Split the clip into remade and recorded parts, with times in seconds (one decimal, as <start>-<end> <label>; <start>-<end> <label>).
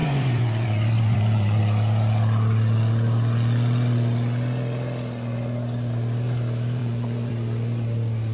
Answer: 0.0-1.6 remade; 1.6-6.8 recorded; 6.8-7.3 remade; 7.3-8.3 recorded